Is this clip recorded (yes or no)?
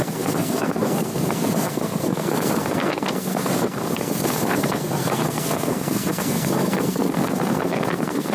no